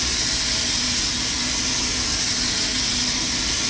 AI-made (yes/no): no